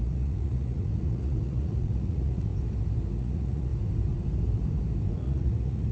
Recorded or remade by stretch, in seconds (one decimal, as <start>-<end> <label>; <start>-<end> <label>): 0.0-2.5 remade; 2.5-3.1 recorded; 3.1-3.7 remade; 3.7-5.1 recorded; 5.1-5.9 remade